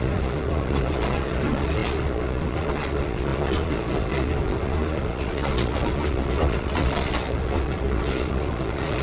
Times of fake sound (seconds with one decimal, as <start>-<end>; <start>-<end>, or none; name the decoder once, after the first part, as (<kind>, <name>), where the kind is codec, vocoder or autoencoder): 0.0-9.0 (vocoder, Vocos)